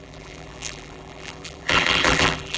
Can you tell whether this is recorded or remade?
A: remade